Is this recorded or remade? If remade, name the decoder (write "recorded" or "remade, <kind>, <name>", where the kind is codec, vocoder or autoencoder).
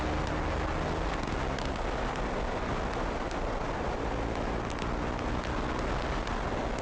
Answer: recorded